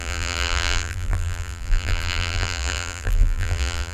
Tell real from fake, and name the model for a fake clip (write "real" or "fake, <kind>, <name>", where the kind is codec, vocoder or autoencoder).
fake, vocoder, BigVGAN v2